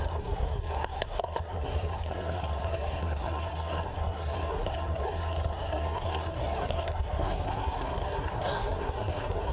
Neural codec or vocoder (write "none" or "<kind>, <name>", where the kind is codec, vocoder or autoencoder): codec, SNAC